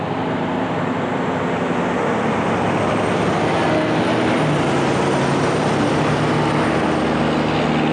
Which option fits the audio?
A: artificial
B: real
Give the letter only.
B